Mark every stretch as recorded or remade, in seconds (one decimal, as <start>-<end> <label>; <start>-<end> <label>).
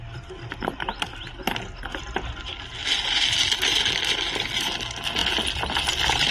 0.0-6.3 recorded